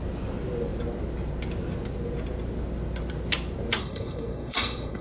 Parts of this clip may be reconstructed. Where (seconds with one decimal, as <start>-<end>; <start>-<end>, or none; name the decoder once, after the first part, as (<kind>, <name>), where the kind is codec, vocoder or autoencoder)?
3.8-5.0 (codec, SNAC)